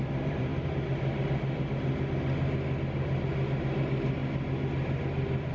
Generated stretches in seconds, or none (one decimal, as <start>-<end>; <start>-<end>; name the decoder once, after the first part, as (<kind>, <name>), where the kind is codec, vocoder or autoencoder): 0.0-0.5 (vocoder, BigVGAN v2); 3.8-4.2